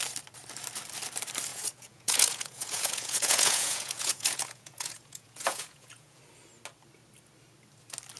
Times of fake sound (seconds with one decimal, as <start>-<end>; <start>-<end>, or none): 1.5-6.2